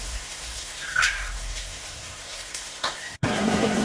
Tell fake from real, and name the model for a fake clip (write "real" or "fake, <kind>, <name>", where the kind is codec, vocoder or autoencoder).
fake, codec, SNAC